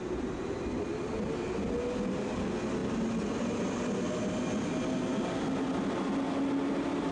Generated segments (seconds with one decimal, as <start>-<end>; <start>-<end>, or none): none